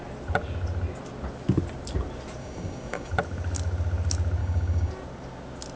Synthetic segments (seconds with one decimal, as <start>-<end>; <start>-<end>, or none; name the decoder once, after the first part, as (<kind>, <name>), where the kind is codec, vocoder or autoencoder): 2.4-3.1 (codec, DAC); 4.4-4.9